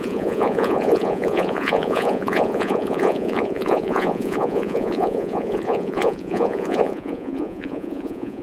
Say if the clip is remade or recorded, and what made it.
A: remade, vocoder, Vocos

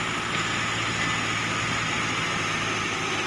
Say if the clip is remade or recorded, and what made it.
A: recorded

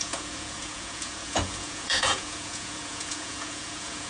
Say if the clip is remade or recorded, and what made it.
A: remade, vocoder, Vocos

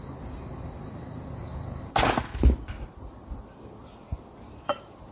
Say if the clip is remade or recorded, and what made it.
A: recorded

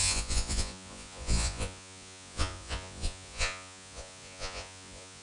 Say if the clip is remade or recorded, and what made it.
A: remade, vocoder, Vocos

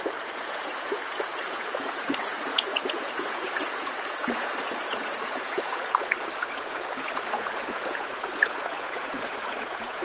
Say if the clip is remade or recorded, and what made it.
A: remade, vocoder, Vocos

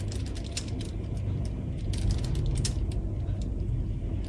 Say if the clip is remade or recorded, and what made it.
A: recorded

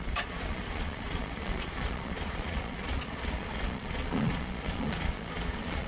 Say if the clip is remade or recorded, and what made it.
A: remade, vocoder, Vocos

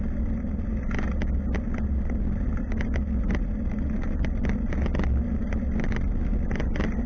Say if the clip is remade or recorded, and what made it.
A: recorded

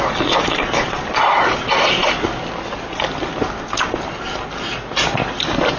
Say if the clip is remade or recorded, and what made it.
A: recorded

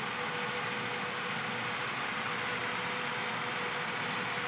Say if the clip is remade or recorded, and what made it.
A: recorded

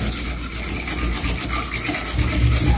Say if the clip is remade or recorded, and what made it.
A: recorded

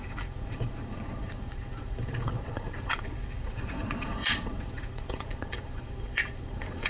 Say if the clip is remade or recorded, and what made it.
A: remade, vocoder, Vocos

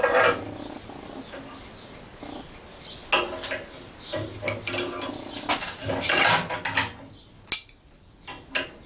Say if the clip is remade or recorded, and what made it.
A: recorded